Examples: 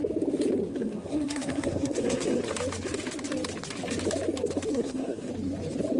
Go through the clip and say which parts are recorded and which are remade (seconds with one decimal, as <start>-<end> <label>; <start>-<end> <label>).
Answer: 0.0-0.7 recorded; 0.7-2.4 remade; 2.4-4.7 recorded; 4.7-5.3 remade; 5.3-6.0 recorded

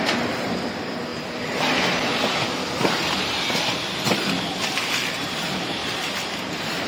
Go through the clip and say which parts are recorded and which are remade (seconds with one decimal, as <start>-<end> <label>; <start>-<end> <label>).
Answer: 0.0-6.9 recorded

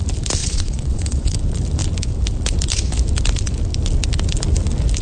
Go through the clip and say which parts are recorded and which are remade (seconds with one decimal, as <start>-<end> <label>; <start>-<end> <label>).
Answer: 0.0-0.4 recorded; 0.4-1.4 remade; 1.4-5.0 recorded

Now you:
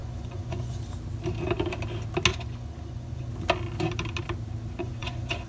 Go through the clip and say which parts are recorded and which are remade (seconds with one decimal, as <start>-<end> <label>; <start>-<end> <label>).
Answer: 0.0-0.8 remade; 0.8-2.3 recorded; 2.3-3.3 remade; 3.3-4.8 recorded; 4.8-5.5 remade

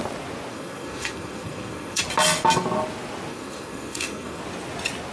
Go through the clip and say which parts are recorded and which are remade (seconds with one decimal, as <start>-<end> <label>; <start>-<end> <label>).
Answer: 0.0-0.5 recorded; 0.5-2.0 remade; 2.0-3.3 recorded; 3.3-4.4 remade; 4.4-5.1 recorded

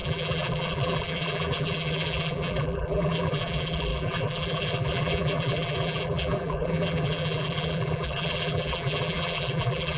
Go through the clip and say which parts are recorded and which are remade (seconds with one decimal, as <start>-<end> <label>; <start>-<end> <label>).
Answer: 0.0-10.0 remade

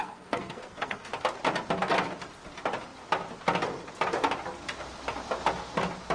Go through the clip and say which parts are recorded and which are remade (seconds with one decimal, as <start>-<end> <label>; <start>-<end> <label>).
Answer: 0.0-1.1 remade; 1.1-6.1 recorded